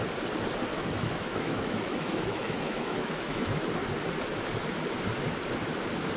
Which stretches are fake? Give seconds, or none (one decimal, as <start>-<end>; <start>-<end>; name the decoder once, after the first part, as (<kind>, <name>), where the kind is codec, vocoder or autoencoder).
0.7-3.8 (autoencoder, DAC-VAE)